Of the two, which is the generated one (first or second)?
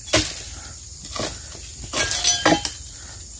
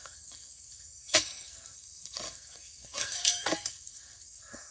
second